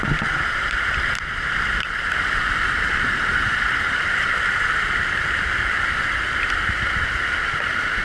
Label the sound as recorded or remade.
remade